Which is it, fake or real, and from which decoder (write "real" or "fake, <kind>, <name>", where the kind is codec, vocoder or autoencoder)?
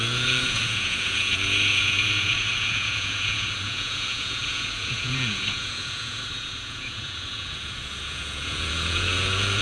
fake, vocoder, Vocos